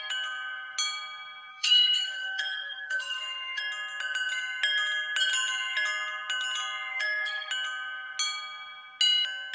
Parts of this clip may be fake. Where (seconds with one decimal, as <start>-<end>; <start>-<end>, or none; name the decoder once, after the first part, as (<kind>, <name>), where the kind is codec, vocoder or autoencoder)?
1.5-3.6 (codec, SNAC); 6.9-7.5